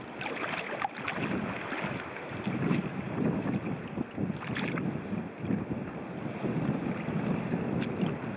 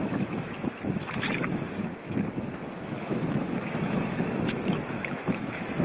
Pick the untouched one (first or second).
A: first